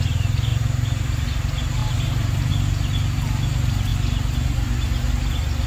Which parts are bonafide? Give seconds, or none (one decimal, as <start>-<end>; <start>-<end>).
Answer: 0.0-0.5; 1.2-1.8; 2.5-5.7